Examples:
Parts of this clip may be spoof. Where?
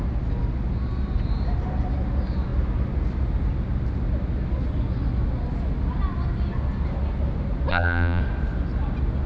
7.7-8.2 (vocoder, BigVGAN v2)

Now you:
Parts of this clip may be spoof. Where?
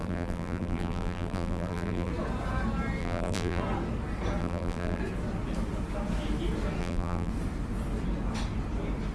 0.0-2.1 (vocoder, BigVGAN v2); 3.0-3.6; 4.4-5.0; 6.8-7.3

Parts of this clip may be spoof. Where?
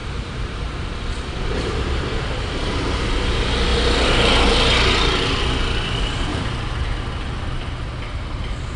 0.0-2.7 (vocoder, BigVGAN v2); 6.3-7.0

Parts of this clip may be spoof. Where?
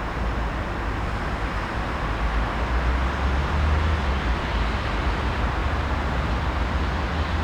5.6-6.3 (vocoder, BigVGAN v2)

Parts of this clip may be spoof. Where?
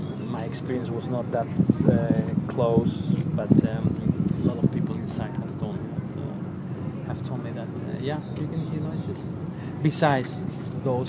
0.8-1.6 (vocoder, BigVGAN v2)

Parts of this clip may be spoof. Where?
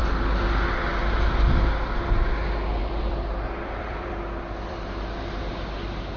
2.8-5.2 (vocoder, BigVGAN v2)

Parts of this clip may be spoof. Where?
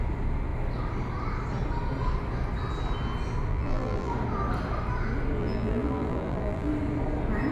3.5-4.1 (vocoder, BigVGAN v2); 5.4-6.7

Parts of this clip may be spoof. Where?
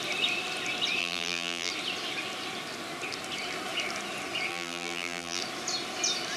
1.0-1.7 (vocoder, BigVGAN v2); 4.5-5.4